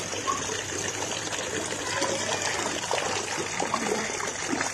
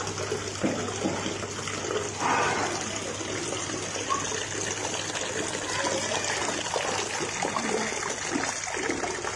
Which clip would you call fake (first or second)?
first